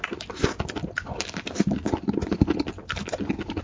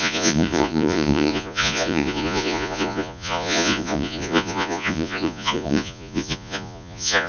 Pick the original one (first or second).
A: first